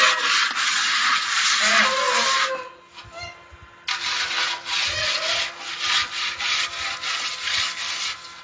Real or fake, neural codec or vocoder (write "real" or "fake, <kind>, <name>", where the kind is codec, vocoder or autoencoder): real